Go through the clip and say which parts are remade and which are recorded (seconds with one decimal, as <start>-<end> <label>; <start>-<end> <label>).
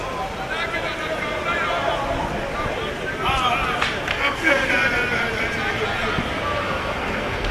0.0-4.1 recorded; 4.1-4.7 remade; 4.7-6.6 recorded; 6.6-7.5 remade